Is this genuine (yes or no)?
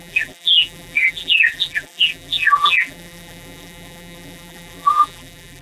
no